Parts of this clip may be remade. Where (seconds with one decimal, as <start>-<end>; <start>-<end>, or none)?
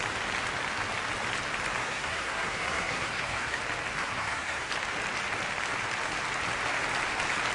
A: 1.8-3.6; 4.0-4.7